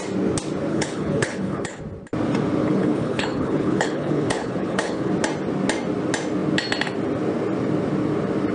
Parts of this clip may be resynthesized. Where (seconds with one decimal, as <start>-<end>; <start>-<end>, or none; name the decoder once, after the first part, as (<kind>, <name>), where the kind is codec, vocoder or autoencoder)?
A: 0.7-1.8 (codec, HILCodec); 2.6-5.1